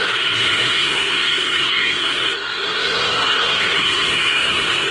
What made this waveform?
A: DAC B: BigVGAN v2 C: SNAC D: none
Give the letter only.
C